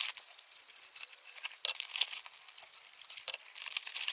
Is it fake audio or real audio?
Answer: real